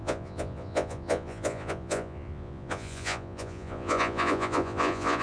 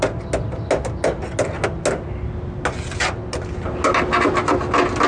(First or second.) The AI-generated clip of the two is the first